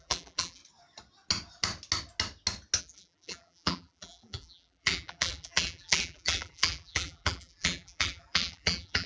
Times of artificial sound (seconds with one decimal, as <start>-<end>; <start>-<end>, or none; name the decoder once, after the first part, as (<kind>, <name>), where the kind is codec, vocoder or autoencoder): 0.0-0.6 (vocoder, BigVGAN v2); 2.8-9.1